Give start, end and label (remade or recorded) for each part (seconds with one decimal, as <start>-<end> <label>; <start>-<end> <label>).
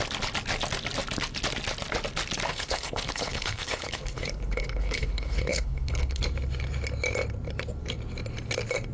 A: 0.0-2.5 recorded; 2.5-6.2 remade; 6.2-8.9 recorded